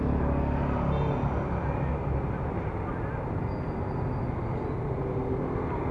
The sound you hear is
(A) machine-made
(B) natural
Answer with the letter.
B